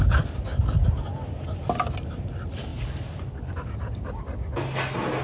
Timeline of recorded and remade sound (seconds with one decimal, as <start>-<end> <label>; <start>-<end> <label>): 0.0-5.2 recorded